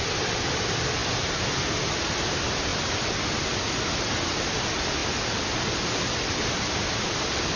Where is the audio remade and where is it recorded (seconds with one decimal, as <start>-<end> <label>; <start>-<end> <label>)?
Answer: 0.0-7.6 recorded